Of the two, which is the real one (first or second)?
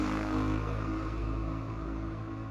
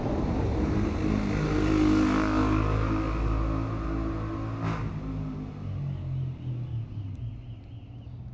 second